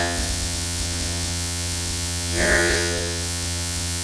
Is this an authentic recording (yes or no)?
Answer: no